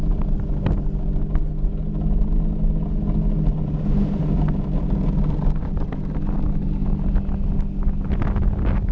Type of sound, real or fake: real